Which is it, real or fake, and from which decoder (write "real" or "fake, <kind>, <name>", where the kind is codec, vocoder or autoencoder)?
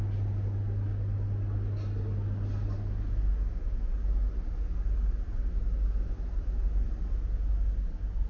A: real